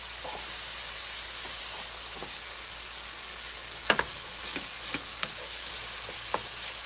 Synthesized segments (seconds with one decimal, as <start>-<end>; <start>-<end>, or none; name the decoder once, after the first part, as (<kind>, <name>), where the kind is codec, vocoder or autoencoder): 0.8-1.6 (codec, DAC); 2.2-5.7